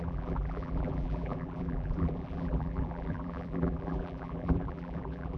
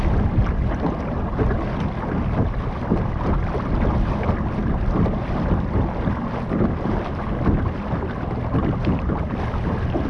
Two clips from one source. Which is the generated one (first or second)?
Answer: first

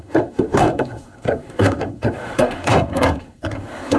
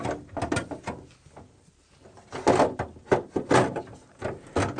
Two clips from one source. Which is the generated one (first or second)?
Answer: first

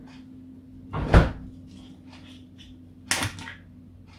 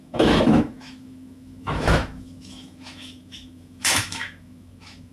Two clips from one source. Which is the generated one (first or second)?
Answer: second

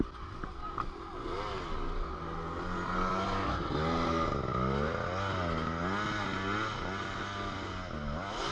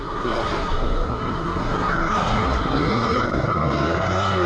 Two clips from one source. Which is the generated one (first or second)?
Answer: second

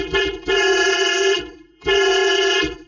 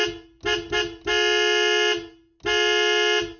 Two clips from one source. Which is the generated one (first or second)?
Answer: first